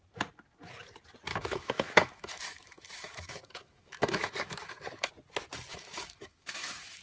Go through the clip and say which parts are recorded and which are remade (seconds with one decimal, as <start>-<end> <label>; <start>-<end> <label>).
0.0-1.3 recorded; 1.3-5.1 remade; 5.1-5.7 recorded; 5.7-7.0 remade